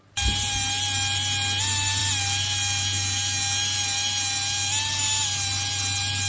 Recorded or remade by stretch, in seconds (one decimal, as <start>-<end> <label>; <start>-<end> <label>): 0.0-6.3 recorded